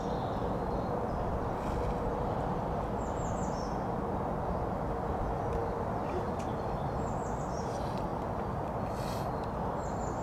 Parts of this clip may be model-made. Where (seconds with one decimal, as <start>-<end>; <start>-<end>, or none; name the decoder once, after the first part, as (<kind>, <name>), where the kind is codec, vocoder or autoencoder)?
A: none